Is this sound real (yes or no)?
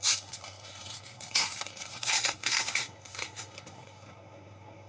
no